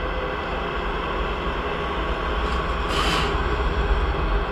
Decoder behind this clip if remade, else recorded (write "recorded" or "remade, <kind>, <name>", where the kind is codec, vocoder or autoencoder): recorded